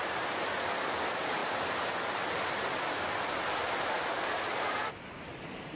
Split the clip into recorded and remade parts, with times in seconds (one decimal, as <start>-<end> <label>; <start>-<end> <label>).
0.0-1.4 recorded; 1.4-4.9 remade; 4.9-5.8 recorded